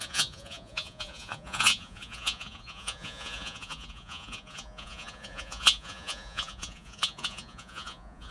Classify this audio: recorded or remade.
remade